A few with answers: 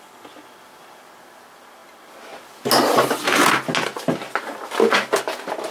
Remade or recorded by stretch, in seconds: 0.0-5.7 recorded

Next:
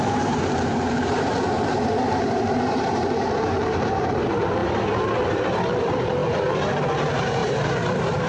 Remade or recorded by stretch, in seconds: 0.0-8.3 remade

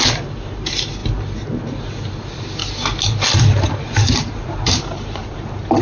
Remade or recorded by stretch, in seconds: 0.0-2.6 remade; 2.6-3.3 recorded; 3.3-5.8 remade